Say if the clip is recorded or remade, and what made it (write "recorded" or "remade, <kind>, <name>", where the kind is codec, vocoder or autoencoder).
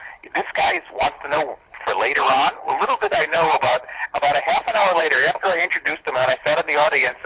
remade, codec, HILCodec